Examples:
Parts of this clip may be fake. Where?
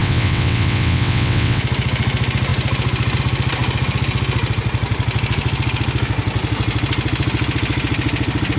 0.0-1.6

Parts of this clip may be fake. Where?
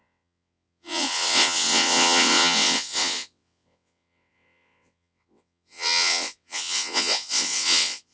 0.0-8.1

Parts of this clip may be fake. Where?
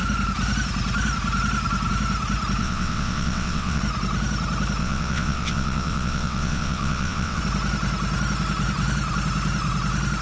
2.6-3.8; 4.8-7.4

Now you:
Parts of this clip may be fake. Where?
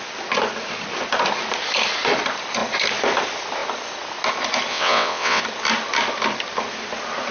4.7-5.4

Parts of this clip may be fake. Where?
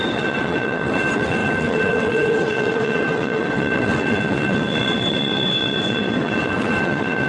0.0-7.3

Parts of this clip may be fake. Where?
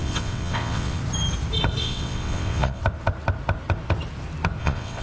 0.0-1.0; 1.8-2.8; 4.6-5.0